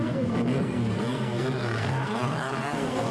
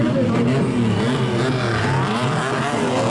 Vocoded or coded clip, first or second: first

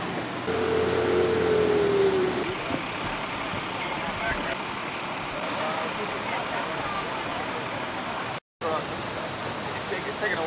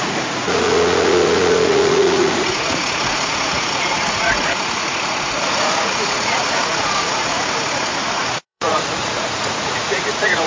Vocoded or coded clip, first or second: second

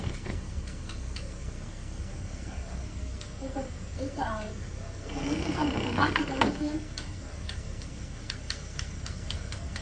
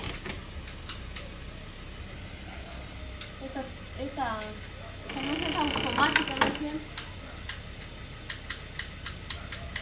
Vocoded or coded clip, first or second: first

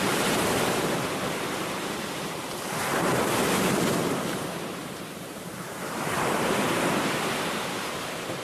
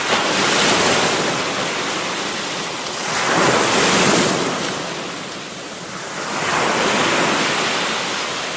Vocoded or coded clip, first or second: first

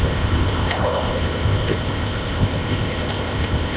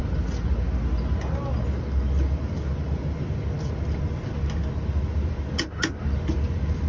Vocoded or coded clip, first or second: first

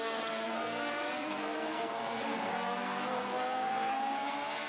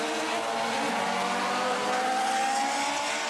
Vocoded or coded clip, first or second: first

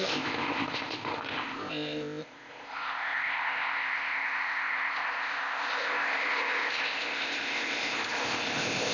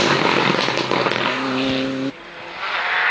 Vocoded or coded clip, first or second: first